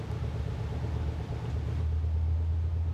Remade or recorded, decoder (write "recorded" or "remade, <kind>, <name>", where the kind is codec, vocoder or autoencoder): recorded